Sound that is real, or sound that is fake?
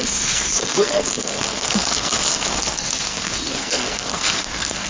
fake